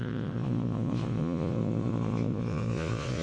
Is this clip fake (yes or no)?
yes